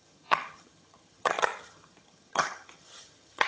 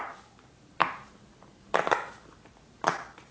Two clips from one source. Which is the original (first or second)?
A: second